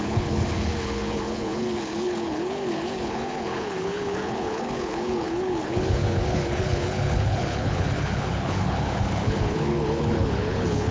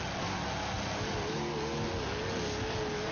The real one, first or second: second